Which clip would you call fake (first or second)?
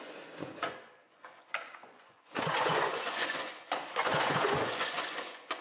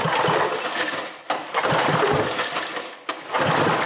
first